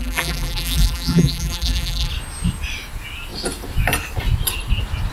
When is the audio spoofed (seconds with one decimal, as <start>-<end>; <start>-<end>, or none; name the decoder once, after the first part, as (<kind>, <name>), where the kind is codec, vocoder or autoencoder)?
0.0-2.1 (vocoder, BigVGAN v2)